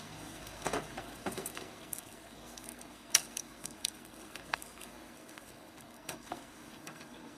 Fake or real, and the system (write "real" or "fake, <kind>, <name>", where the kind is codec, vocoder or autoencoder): fake, codec, SNAC